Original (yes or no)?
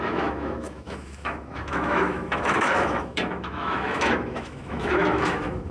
no